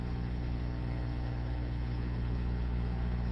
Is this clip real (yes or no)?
no